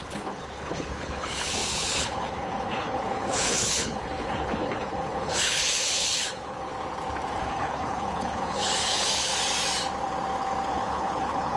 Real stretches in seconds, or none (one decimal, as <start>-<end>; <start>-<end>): 6.7-7.5; 9.3-10.7